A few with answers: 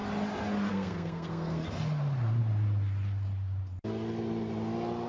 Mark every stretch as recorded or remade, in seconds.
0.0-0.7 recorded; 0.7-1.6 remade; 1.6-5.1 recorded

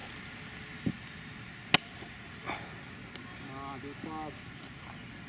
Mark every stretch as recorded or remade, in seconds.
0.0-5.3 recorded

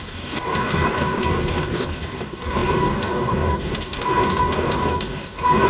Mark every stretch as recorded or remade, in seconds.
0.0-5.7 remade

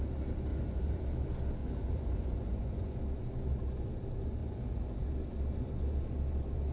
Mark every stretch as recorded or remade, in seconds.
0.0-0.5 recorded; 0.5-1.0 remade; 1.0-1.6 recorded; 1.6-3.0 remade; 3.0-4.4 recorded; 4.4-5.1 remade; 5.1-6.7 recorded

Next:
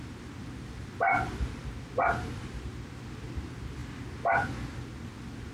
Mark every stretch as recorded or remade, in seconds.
0.0-5.5 recorded

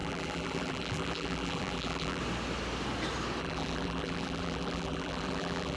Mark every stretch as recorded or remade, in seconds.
0.0-2.2 remade; 2.2-3.4 recorded; 3.4-5.8 remade

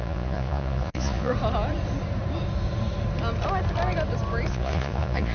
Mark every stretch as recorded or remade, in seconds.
0.0-1.3 remade; 1.3-4.5 recorded; 4.5-5.3 remade

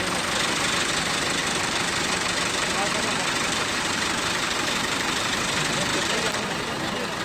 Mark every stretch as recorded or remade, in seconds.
0.0-1.4 recorded; 1.4-5.4 remade; 5.4-5.9 recorded; 5.9-6.7 remade; 6.7-7.2 recorded